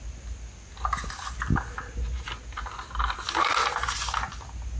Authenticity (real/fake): real